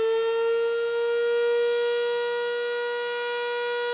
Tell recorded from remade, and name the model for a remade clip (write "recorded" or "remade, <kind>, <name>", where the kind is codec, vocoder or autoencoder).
recorded